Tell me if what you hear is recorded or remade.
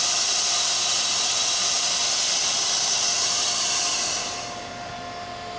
recorded